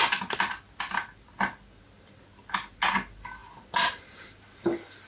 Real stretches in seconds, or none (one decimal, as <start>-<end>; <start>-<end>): 0.0-5.1